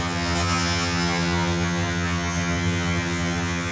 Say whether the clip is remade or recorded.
remade